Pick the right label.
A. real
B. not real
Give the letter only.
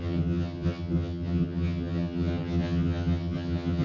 B